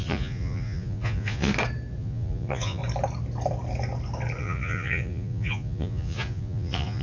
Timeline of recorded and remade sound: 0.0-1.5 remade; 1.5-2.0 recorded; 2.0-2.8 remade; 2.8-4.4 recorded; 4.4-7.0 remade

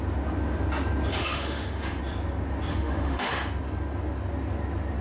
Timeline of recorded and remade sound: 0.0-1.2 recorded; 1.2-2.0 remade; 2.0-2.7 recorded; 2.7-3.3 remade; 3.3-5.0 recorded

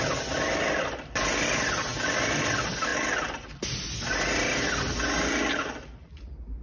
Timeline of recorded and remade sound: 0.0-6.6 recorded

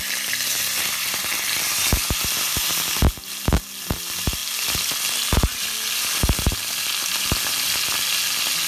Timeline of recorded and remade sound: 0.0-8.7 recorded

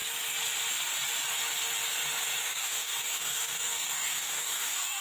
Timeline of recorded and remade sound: 0.0-2.4 recorded; 2.4-5.0 remade

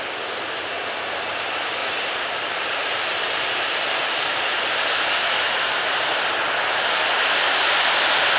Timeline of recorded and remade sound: 0.0-1.8 recorded; 1.8-6.1 remade; 6.1-8.4 recorded

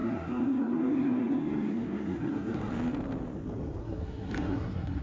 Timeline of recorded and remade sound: 0.0-2.7 remade; 2.7-3.8 recorded; 3.8-5.0 remade